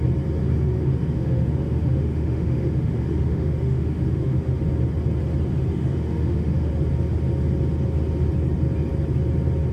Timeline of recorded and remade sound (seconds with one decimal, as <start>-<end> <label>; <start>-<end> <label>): 0.0-0.4 recorded; 0.4-4.6 remade; 4.6-5.7 recorded; 5.7-6.7 remade; 6.7-9.7 recorded